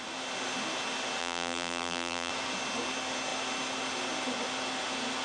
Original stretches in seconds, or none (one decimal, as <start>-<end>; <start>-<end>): 0.0-1.2; 2.3-5.2